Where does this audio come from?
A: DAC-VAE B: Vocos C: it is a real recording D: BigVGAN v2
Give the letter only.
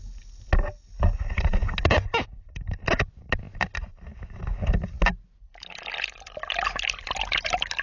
C